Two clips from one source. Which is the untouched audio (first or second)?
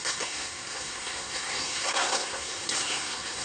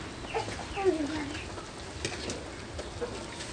second